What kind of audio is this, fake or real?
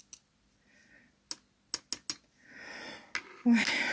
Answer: real